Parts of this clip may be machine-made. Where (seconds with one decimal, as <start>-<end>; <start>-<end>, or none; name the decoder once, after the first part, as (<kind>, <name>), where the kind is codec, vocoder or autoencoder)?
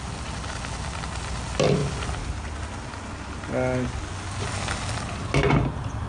none